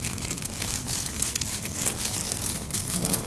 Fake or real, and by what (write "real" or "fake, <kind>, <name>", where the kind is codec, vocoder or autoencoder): fake, codec, SNAC